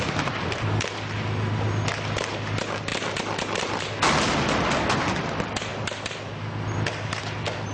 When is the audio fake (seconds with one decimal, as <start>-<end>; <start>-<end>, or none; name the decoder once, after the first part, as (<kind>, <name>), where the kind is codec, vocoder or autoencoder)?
none